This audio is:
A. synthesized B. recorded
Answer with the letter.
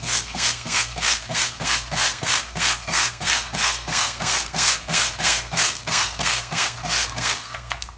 A